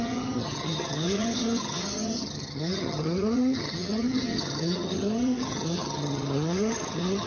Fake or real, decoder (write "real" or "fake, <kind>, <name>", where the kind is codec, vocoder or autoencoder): fake, vocoder, HiFi-GAN